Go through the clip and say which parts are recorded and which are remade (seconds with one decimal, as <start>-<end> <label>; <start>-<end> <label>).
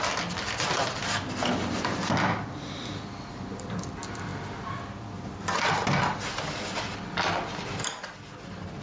0.0-8.8 recorded